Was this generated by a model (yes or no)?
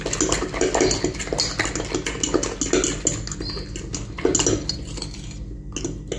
no